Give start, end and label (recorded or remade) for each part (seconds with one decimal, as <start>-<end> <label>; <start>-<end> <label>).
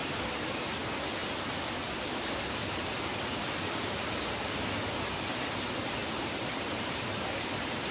0.0-1.2 recorded; 1.2-4.8 remade; 4.8-6.0 recorded; 6.0-7.9 remade